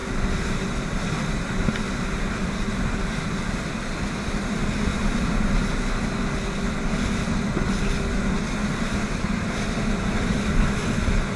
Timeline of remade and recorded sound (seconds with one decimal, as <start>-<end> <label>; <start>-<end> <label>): 0.0-4.9 recorded; 4.9-5.5 remade; 5.5-8.6 recorded; 8.6-10.4 remade; 10.4-11.4 recorded